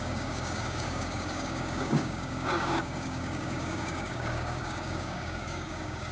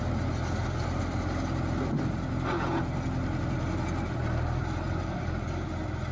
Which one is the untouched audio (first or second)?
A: second